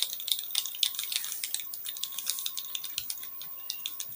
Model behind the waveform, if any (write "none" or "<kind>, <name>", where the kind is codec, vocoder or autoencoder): none